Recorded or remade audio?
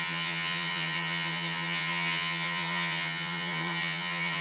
remade